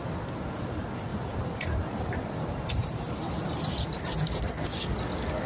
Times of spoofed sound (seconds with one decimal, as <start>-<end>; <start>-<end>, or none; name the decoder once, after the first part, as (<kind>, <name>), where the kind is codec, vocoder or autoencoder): 1.1-4.4 (vocoder, BigVGAN v2)